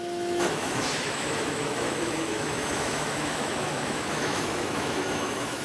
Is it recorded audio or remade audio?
remade